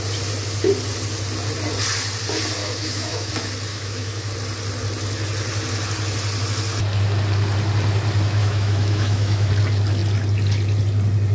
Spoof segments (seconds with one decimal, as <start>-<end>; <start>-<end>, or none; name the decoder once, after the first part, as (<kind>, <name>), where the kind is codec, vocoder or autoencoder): 2.6-3.3 (autoencoder, DAC-VAE); 3.7-4.3; 8.4-9.5